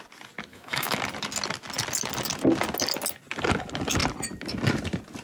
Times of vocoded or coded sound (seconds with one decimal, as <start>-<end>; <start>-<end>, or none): 0.5-1.0